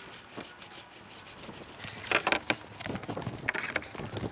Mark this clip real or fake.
real